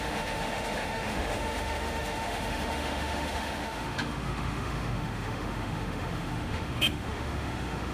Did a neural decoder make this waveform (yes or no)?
yes